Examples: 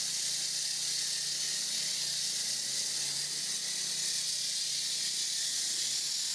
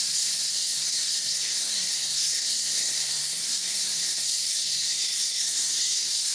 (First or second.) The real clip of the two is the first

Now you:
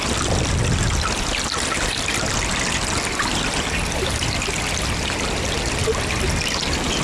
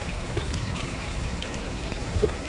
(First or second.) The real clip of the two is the first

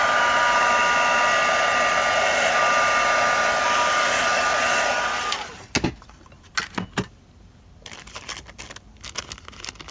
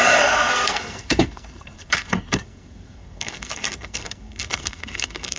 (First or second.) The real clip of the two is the first